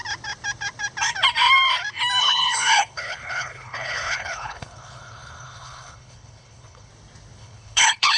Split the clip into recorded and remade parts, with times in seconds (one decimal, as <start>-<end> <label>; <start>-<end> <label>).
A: 0.0-2.2 recorded; 2.2-6.9 remade; 6.9-7.4 recorded; 7.4-8.2 remade